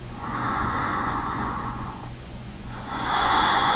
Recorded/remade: remade